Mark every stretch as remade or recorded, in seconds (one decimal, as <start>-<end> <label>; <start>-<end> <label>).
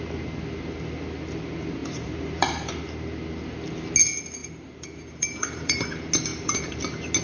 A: 0.0-1.8 recorded; 1.8-2.7 remade; 2.7-4.4 recorded; 4.4-5.8 remade; 5.8-6.3 recorded; 6.3-6.8 remade; 6.8-7.2 recorded